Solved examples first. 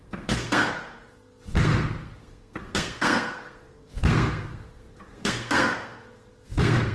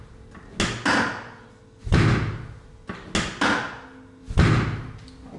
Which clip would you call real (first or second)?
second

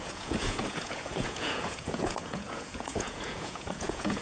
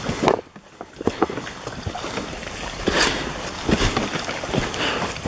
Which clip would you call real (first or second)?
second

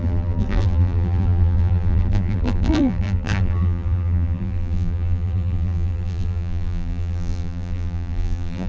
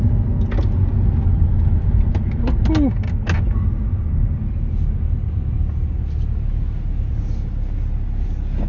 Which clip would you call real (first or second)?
second